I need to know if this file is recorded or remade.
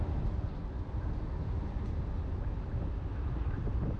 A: recorded